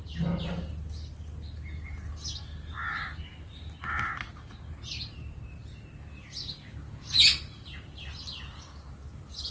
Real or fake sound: real